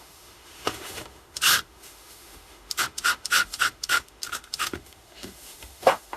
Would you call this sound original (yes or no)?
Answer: no